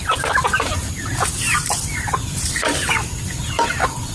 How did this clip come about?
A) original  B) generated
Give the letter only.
A